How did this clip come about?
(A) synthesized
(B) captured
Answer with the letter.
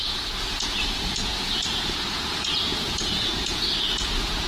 A